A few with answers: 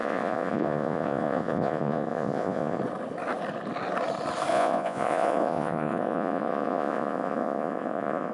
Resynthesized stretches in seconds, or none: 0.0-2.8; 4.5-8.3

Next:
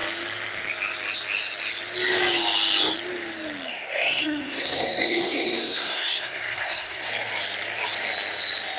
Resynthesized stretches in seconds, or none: 3.7-7.1

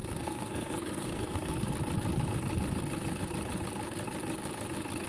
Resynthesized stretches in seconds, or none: 0.0-1.7

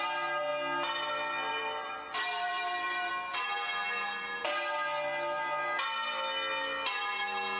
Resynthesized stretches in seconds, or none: 1.5-3.1

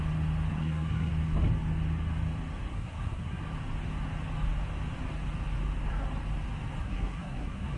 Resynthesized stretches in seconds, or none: 0.5-1.1; 2.7-3.4; 6.8-7.8

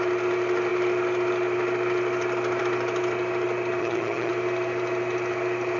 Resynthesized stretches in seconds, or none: 3.8-4.3

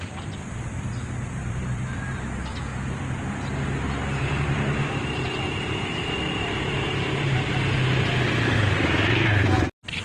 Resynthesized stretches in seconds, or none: 1.4-2.2; 2.7-7.4

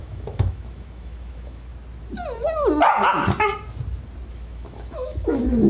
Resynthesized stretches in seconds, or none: 0.0-1.7; 4.3-5.7